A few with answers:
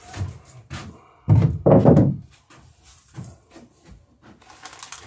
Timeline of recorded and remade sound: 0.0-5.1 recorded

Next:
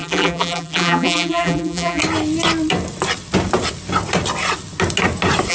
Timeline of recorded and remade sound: 0.0-2.0 remade; 2.0-5.5 recorded

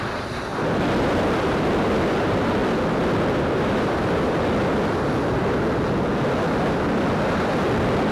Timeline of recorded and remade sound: 0.0-5.4 remade; 5.4-7.0 recorded; 7.0-8.1 remade

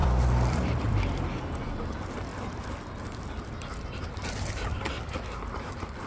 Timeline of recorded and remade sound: 0.0-6.1 remade

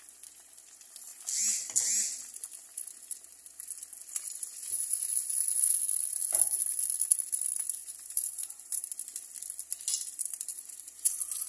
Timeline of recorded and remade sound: 0.0-7.8 recorded; 7.8-8.8 remade; 8.8-10.5 recorded; 10.5-11.1 remade; 11.1-11.5 recorded

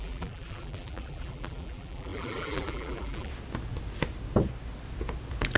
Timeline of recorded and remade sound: 0.0-3.3 remade; 3.3-5.6 recorded